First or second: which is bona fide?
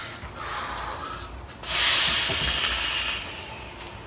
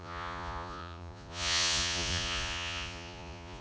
first